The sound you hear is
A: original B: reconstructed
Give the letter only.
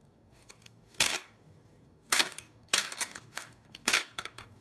B